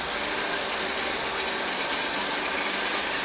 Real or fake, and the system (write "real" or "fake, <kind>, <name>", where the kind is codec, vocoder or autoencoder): real